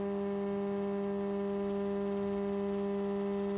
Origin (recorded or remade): recorded